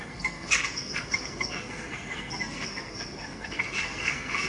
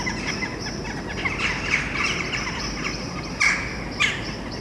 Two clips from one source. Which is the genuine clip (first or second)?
second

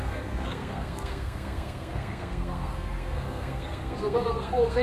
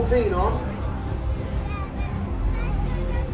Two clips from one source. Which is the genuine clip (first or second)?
second